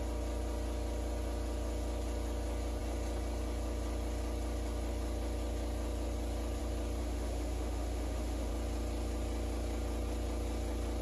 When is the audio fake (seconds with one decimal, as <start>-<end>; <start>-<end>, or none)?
7.0-8.5